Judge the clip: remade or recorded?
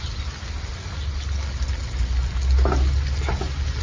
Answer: recorded